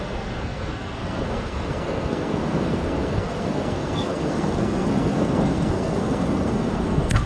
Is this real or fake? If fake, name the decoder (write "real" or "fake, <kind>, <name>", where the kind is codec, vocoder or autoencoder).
fake, codec, SNAC